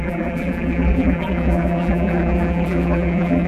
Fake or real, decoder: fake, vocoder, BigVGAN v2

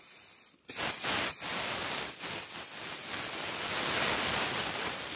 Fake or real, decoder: real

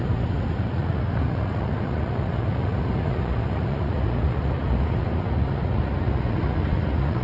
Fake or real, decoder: fake, vocoder, Vocos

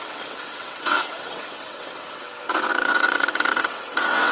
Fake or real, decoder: fake, vocoder, WaveNeXt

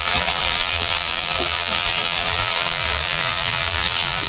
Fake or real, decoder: fake, vocoder, BigVGAN v2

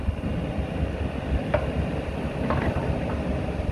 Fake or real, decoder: real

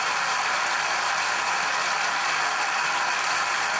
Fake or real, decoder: real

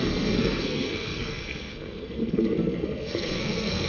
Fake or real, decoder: fake, codec, SNAC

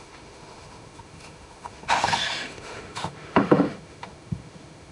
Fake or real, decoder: fake, autoencoder, DAC-VAE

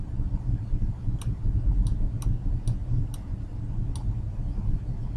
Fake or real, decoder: real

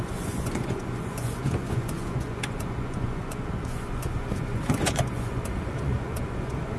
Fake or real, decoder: fake, vocoder, Vocos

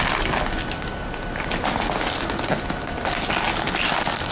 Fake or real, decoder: real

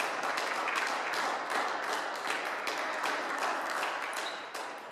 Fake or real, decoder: real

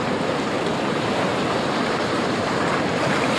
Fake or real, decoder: fake, vocoder, BigVGAN v2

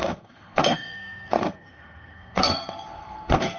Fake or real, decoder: fake, codec, SNAC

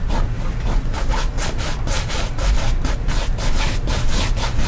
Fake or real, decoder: real